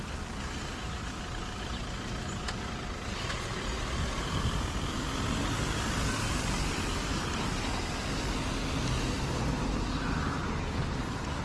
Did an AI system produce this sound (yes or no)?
no